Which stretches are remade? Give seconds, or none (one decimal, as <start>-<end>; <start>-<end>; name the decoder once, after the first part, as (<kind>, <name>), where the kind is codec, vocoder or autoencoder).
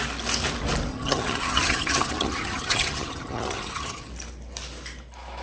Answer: 0.9-4.1 (vocoder, HiFi-GAN)